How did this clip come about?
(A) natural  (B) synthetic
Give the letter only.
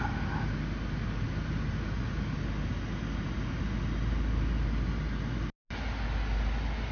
A